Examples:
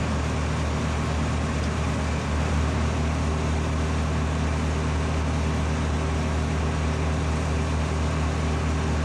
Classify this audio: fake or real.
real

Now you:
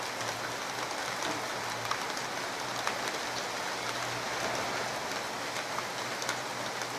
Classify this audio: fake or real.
real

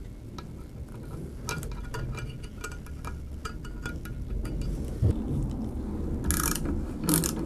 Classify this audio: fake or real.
real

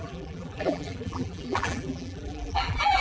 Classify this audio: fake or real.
fake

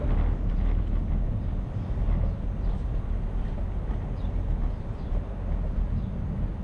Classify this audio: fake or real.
real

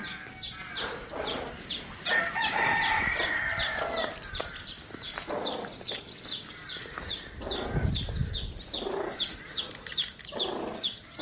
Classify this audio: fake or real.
real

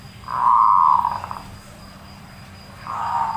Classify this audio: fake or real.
fake